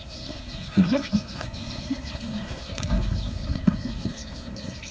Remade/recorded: remade